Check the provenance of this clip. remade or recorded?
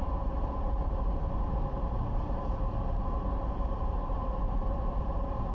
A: remade